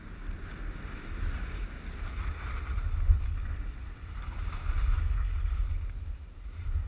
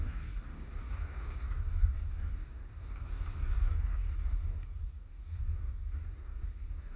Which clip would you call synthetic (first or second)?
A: second